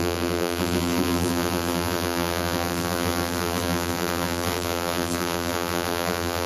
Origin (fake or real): fake